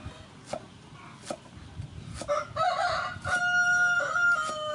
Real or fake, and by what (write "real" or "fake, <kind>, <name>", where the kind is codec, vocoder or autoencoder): real